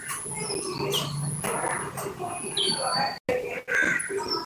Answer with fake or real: real